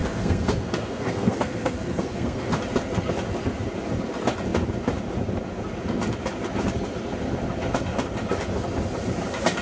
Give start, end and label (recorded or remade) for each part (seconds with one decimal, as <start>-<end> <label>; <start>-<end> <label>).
0.0-2.6 remade; 2.6-9.6 recorded